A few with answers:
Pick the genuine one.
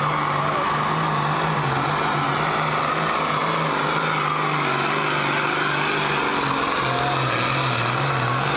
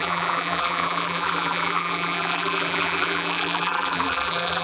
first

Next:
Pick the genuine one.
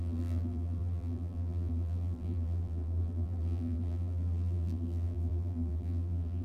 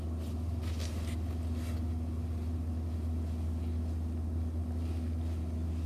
second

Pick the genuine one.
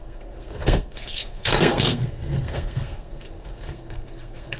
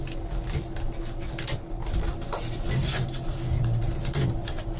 second